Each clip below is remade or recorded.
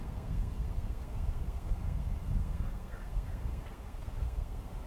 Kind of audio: remade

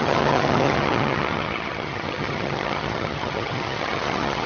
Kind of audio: remade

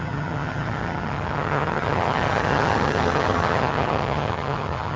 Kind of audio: remade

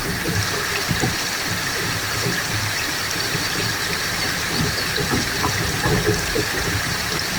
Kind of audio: remade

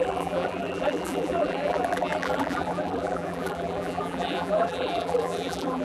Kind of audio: remade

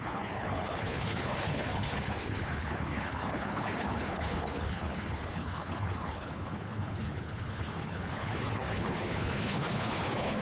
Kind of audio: remade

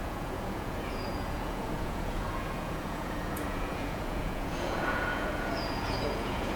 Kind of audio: remade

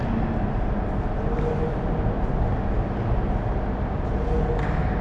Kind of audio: recorded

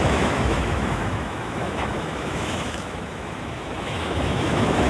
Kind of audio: remade